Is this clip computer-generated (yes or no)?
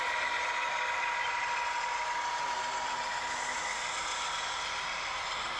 no